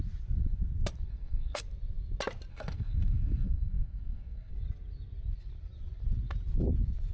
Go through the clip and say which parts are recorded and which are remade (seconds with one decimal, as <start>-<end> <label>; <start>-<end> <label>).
0.0-1.1 recorded; 1.1-1.6 remade; 1.6-2.5 recorded; 2.5-4.5 remade; 4.5-7.1 recorded